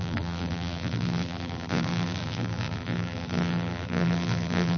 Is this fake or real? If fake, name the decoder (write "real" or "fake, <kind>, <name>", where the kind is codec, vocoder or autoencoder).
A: fake, vocoder, BigVGAN v2